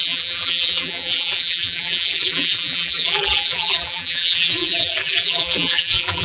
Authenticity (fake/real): fake